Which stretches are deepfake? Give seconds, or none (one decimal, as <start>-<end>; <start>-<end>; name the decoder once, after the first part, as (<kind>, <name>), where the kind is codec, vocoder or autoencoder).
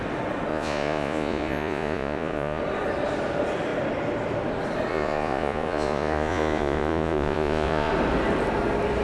0.5-2.6 (vocoder, Vocos); 4.9-7.9